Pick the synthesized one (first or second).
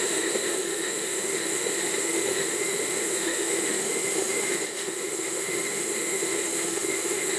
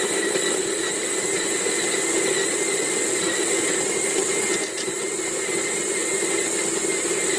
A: first